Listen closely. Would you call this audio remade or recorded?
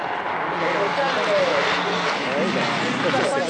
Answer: recorded